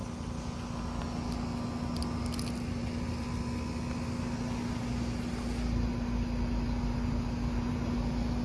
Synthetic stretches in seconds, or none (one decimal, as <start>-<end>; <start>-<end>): none